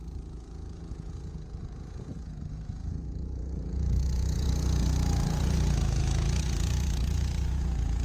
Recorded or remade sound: remade